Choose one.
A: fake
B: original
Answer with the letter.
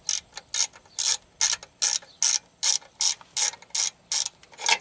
B